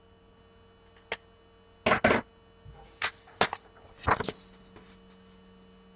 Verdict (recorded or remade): recorded